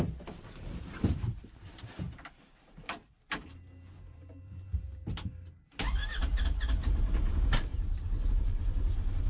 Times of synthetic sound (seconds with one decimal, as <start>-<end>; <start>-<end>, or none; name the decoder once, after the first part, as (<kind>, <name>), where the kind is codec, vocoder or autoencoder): 0.0-9.3 (vocoder, BigVGAN v2)